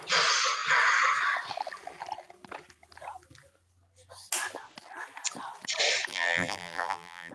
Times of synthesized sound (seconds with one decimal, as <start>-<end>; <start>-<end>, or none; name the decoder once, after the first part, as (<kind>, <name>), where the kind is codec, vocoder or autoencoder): 6.1-7.3 (vocoder, BigVGAN v2)